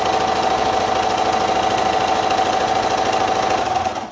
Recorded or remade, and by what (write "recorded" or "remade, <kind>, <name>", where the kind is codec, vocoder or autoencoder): recorded